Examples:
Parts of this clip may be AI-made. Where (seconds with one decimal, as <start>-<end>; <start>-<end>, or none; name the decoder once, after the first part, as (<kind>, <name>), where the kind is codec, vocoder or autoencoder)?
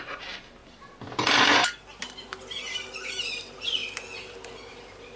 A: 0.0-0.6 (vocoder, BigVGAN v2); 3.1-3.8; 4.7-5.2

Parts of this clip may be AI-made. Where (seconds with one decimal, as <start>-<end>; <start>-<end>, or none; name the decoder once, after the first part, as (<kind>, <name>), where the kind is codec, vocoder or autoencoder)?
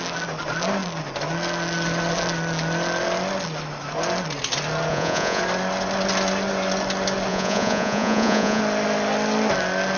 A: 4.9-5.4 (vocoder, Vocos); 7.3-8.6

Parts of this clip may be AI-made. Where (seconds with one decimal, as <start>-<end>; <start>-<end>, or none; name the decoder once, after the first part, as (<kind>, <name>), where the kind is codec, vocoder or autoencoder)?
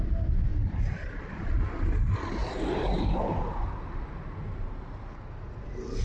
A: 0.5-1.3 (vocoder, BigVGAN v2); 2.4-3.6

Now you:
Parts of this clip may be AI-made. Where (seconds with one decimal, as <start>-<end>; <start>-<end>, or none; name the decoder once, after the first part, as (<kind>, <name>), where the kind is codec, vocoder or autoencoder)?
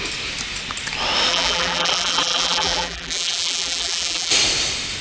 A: 1.3-4.3 (vocoder, BigVGAN v2)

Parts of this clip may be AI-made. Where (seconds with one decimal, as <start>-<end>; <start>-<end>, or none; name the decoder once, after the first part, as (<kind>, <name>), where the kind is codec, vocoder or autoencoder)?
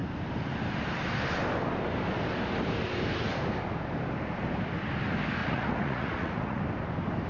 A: 5.4-6.6 (vocoder, Vocos)